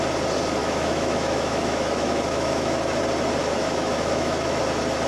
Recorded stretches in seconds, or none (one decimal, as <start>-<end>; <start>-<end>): 0.0-0.6; 3.0-3.4; 4.6-5.1